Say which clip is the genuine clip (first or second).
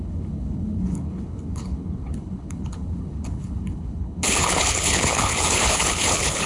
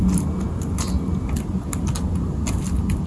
second